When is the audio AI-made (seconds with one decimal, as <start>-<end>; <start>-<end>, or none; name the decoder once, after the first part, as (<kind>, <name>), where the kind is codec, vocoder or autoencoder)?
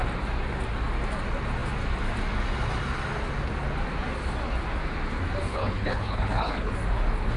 5.5-6.7 (codec, HILCodec)